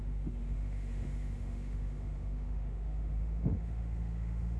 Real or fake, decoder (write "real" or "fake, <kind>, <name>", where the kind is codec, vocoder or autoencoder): fake, autoencoder, DAC-VAE